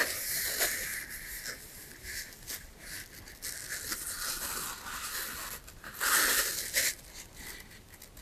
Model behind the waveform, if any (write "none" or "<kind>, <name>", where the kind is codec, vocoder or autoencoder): none